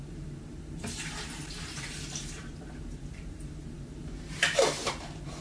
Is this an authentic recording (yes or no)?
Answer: no